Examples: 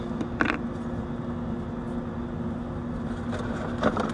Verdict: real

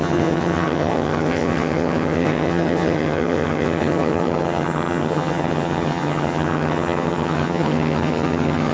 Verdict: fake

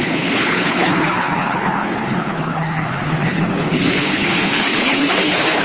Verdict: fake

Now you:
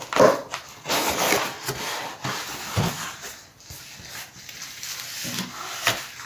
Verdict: real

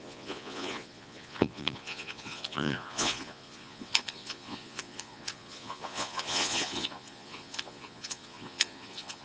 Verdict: fake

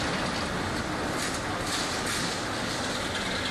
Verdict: real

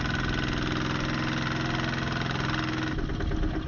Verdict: real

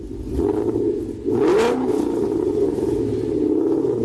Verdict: real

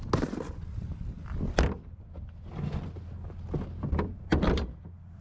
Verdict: real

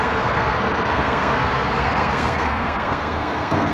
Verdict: fake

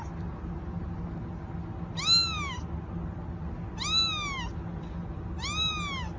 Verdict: real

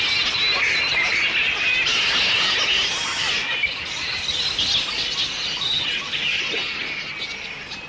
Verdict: real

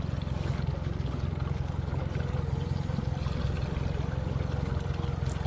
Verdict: real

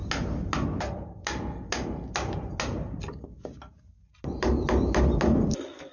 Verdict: real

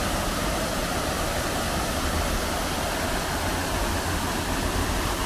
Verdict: real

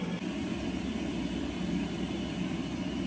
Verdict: real